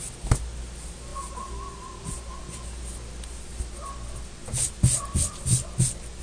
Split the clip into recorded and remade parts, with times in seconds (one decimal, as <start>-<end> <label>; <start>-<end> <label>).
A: 0.0-6.2 recorded